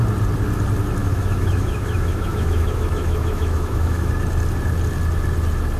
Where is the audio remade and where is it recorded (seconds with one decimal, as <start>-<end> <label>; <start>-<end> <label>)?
0.0-1.0 recorded; 1.0-4.1 remade; 4.1-5.8 recorded